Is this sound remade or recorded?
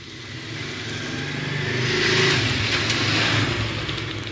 recorded